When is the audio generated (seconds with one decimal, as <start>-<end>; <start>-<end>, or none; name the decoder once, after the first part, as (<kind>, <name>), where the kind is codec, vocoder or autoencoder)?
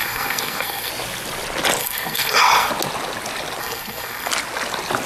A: 0.0-0.9 (codec, SNAC); 1.8-2.7; 3.6-4.3